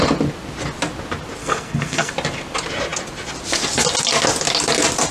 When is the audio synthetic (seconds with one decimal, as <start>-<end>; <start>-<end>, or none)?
1.4-2.1